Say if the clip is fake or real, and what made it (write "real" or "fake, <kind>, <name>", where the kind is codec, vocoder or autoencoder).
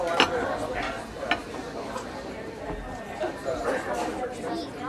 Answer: real